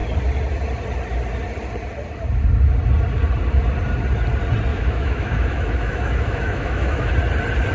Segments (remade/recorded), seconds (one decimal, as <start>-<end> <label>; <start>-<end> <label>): 0.0-4.7 recorded; 4.7-7.1 remade; 7.1-7.7 recorded